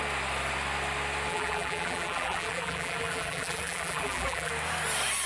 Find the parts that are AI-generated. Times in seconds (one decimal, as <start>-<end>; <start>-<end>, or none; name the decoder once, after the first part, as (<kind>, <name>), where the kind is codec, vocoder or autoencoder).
1.3-4.5 (vocoder, BigVGAN v2)